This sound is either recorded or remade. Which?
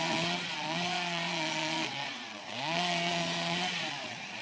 remade